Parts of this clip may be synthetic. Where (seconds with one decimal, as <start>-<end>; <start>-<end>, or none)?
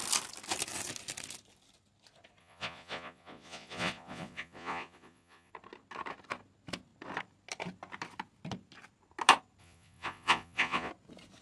2.4-5.5; 9.6-10.9